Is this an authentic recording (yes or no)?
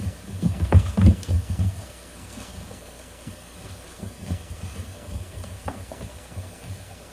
no